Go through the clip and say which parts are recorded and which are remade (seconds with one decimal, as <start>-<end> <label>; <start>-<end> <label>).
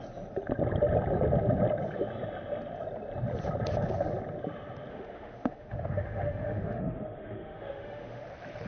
0.0-4.9 recorded; 4.9-8.2 remade; 8.2-8.7 recorded